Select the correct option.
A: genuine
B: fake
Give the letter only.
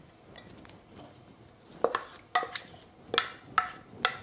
A